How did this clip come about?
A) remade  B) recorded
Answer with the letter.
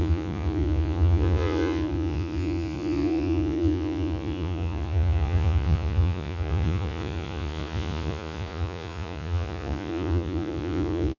A